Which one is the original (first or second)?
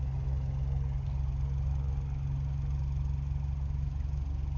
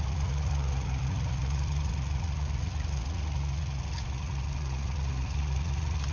first